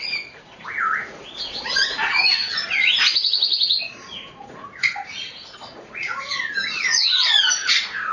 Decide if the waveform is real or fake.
fake